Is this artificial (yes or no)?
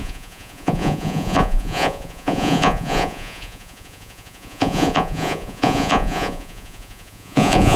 yes